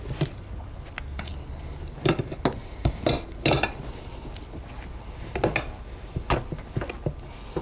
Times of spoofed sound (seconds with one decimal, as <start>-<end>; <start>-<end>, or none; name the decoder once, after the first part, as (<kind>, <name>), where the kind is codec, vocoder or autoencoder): none